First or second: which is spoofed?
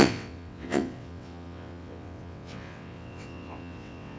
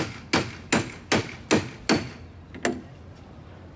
first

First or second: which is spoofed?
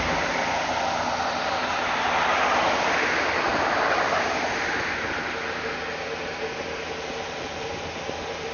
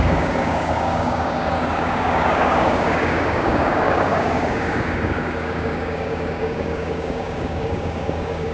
second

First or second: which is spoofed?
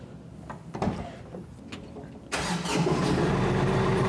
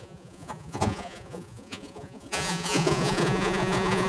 second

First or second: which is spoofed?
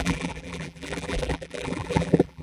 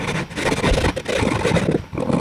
first